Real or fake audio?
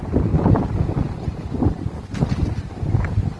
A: real